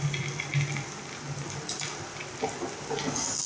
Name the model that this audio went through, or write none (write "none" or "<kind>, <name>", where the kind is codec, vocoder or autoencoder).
none